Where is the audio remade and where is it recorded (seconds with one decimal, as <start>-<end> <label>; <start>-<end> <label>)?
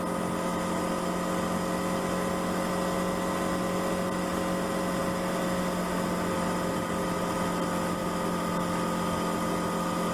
0.0-10.1 recorded